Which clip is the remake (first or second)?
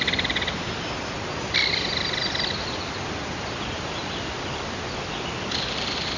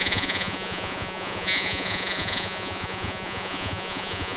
second